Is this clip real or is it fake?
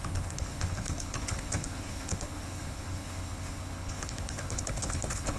fake